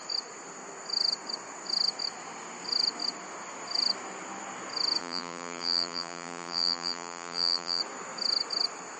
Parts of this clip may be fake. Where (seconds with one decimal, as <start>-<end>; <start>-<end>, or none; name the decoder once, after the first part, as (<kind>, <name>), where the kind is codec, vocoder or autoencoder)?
5.0-7.8 (vocoder, BigVGAN v2)